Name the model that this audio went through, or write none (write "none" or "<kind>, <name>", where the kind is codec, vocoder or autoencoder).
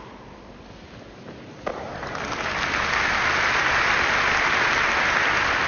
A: none